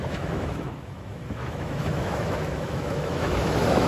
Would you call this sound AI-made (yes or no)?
yes